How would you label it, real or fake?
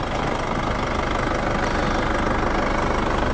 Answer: real